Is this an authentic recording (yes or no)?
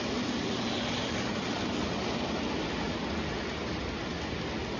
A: yes